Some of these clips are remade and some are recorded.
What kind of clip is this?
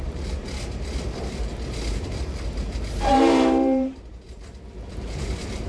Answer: remade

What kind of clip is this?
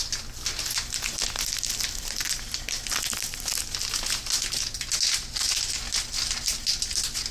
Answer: recorded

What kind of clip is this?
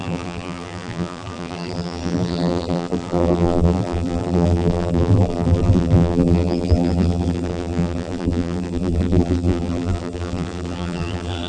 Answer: remade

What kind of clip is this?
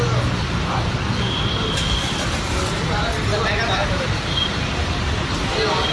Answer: recorded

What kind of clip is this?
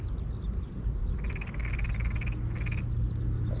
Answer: recorded